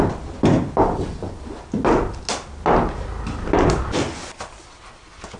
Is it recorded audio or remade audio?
recorded